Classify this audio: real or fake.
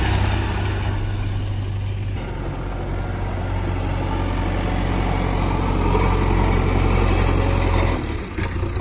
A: real